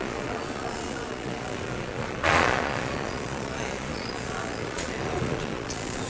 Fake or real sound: fake